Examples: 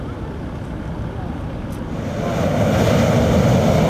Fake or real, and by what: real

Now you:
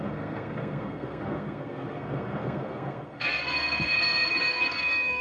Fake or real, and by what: fake, codec, SNAC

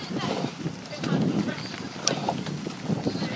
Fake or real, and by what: real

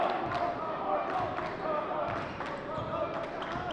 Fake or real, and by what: real